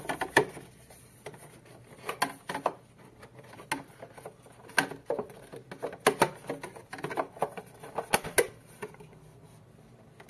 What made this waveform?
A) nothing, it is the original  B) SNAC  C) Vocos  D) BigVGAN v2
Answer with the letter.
A